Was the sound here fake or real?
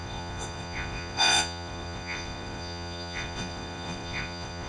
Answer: fake